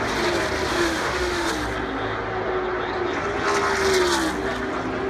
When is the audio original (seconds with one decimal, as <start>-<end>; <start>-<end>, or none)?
0.0-0.7; 1.5-5.1